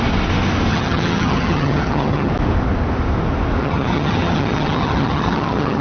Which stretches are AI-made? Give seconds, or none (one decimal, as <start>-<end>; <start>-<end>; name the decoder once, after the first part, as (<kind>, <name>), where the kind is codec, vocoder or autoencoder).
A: 0.7-2.3 (vocoder, HiFi-GAN); 3.6-5.8